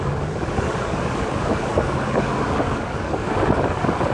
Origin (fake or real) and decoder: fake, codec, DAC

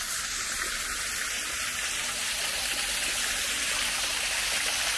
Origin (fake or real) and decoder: real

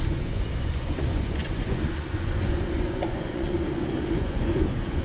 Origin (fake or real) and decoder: fake, vocoder, Vocos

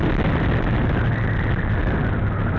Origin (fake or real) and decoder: real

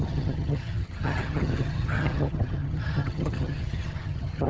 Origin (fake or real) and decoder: fake, vocoder, HiFi-GAN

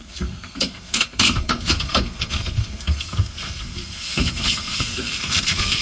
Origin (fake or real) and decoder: fake, codec, SNAC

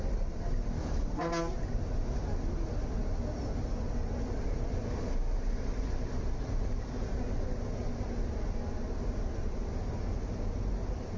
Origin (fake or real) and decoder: real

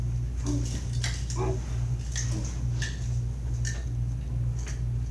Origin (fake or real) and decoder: real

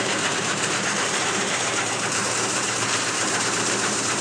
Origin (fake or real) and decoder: fake, vocoder, BigVGAN v2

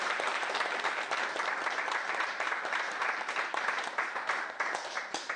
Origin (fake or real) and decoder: fake, vocoder, BigVGAN v2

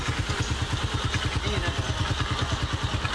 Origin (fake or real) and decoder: real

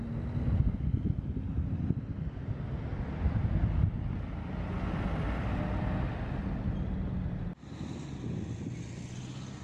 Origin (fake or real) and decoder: real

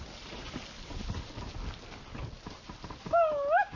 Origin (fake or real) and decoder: real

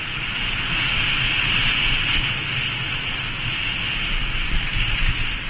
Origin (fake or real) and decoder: real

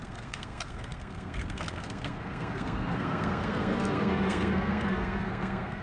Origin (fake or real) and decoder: fake, codec, SNAC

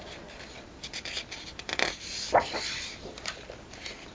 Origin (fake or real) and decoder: fake, vocoder, BigVGAN v2